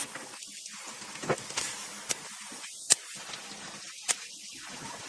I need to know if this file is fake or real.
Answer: real